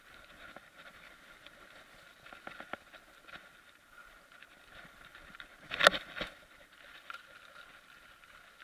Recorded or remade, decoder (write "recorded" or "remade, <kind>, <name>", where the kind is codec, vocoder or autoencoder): recorded